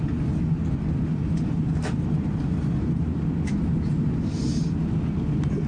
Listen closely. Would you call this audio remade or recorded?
recorded